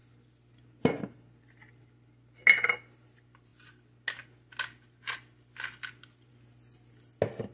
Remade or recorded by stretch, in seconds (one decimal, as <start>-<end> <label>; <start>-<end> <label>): 0.0-7.5 recorded